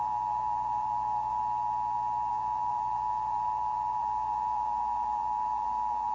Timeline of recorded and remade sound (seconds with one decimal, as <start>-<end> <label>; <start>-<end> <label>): 0.0-1.4 remade; 1.4-2.3 recorded; 2.3-6.1 remade